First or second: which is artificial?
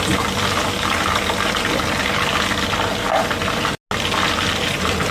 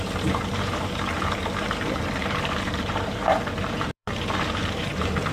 second